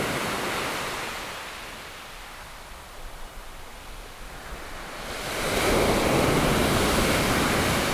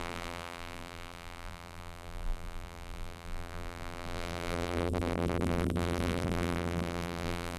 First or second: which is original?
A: first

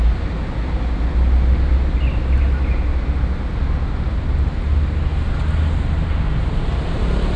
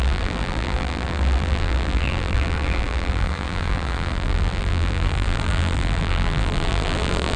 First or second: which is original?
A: first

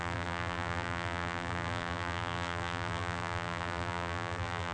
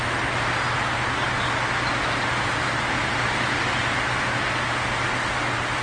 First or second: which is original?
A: second